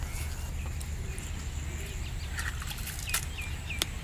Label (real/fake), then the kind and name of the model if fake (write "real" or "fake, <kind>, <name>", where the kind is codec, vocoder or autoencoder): real